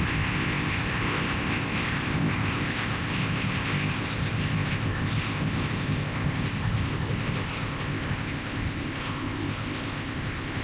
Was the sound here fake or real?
fake